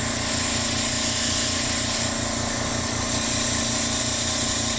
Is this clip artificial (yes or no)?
no